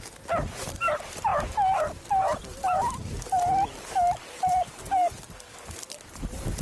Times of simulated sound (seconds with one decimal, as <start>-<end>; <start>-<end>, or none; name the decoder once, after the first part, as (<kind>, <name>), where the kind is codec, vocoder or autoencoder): none